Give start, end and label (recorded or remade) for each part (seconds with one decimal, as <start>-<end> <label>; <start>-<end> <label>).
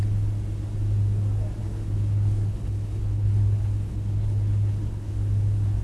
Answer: 0.0-1.6 recorded; 1.6-5.1 remade; 5.1-5.8 recorded